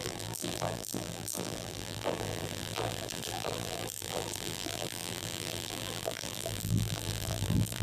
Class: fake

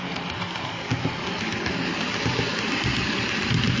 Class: real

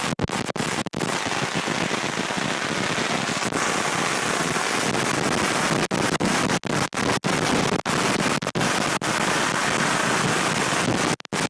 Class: real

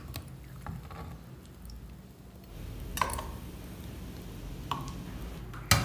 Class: real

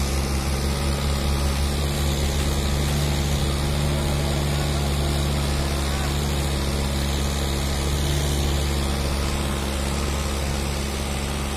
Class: real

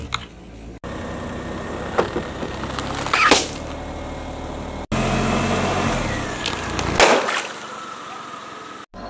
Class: real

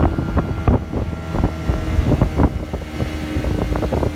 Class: real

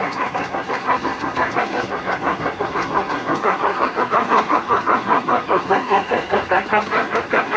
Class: fake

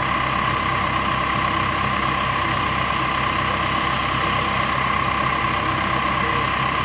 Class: real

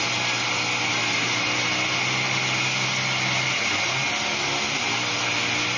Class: real